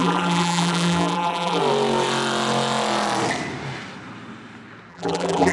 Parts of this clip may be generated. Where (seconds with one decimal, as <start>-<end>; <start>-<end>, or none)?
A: 0.0-1.6; 4.9-5.5